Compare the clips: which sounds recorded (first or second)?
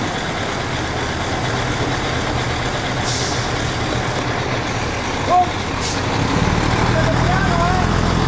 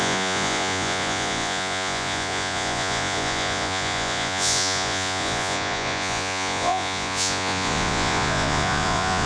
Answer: first